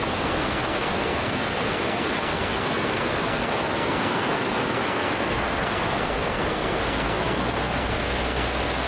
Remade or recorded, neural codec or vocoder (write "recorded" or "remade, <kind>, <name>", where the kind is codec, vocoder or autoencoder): remade, codec, SNAC